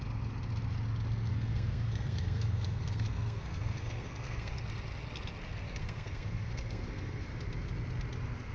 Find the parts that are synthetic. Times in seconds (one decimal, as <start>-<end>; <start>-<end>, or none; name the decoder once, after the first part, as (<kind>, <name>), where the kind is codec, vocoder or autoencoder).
1.3-4.5 (codec, SNAC); 5.8-7.3